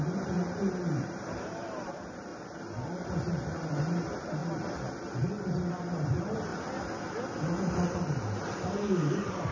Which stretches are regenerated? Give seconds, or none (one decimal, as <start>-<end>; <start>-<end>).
0.0-2.3; 3.2-4.4; 5.7-6.5; 7.8-9.5